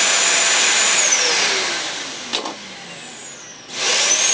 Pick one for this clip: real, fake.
real